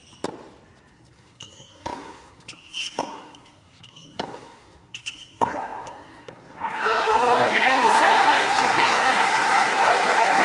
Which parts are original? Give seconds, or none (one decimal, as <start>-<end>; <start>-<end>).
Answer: 0.0-0.9